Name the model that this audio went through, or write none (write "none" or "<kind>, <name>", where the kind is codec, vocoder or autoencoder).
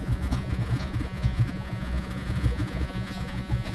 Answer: vocoder, Vocos